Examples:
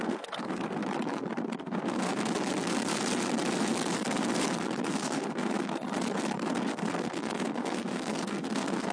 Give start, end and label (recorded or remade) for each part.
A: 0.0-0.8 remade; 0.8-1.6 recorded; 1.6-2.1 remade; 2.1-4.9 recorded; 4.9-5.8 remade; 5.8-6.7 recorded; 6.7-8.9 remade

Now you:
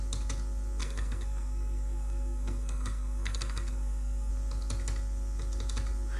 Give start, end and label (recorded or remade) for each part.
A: 0.0-0.8 recorded; 0.8-4.3 remade; 4.3-6.2 recorded

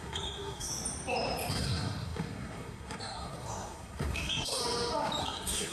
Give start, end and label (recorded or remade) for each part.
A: 0.0-0.7 remade; 0.7-1.5 recorded; 1.5-4.6 remade; 4.6-5.2 recorded; 5.2-5.7 remade

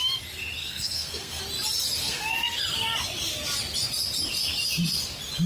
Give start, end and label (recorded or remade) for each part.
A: 0.0-0.6 recorded; 0.6-1.4 remade; 1.4-2.0 recorded; 2.0-2.6 remade; 2.6-5.5 recorded

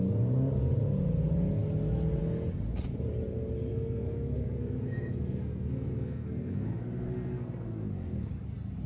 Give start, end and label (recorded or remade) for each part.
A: 0.0-3.7 recorded; 3.7-8.3 remade; 8.3-8.9 recorded

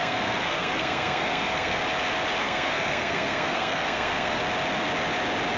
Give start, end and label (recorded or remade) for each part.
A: 0.0-1.8 remade; 1.8-2.4 recorded; 2.4-4.4 remade; 4.4-5.6 recorded